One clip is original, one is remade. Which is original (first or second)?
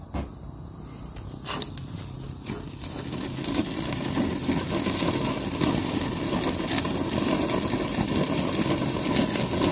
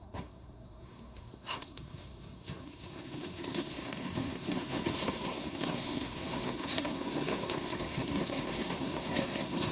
first